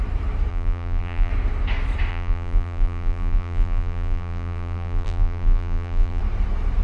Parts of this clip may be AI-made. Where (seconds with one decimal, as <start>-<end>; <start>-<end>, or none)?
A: 0.5-1.3; 2.1-6.2